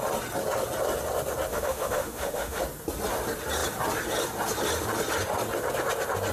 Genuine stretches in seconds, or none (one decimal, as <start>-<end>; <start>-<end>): 0.0-1.5; 2.6-6.3